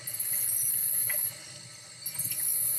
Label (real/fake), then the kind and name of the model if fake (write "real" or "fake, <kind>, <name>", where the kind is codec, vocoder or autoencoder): real